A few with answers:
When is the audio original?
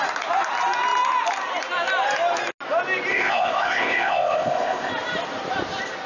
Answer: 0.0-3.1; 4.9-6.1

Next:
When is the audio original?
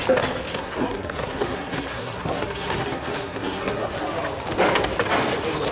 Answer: 0.0-0.5; 3.9-5.7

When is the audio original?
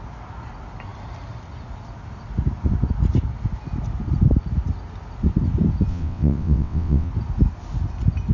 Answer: 0.0-5.9; 7.1-8.3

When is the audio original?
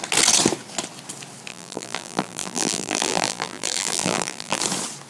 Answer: 0.0-1.5; 4.6-5.1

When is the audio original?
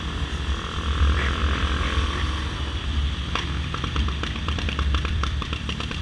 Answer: 1.4-3.7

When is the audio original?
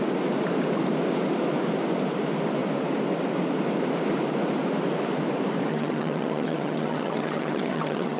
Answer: 0.0-5.7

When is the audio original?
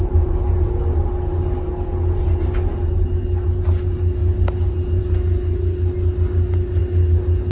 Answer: 0.0-7.5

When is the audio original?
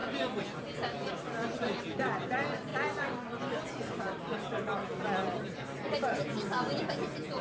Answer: 0.0-7.4